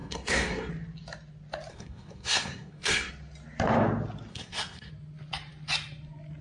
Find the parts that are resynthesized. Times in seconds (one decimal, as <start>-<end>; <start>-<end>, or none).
0.0-0.7; 1.7-3.1; 4.3-4.9

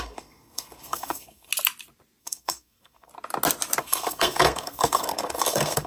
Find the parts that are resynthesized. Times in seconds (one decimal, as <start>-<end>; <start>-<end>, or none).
0.0-1.5; 2.2-3.1; 3.8-5.9

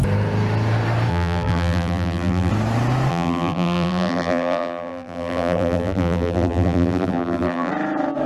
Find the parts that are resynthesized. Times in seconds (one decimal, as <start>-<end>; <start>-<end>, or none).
1.1-2.5; 3.1-7.7

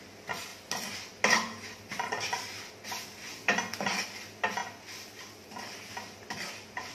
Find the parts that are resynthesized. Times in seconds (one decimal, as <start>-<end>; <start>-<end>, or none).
none

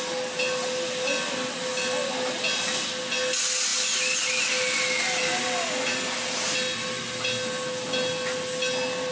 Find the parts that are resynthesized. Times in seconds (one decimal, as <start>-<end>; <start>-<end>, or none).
none